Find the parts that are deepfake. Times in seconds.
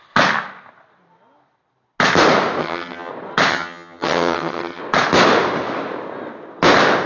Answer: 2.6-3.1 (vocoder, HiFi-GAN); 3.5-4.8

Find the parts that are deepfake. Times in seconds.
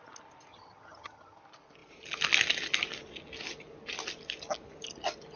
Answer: 0.5-1.4 (vocoder, HiFi-GAN)